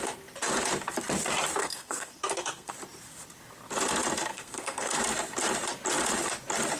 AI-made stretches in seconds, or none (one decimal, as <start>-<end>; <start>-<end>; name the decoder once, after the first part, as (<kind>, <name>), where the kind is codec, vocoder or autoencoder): 1.6-2.7 (codec, SNAC); 4.3-5.0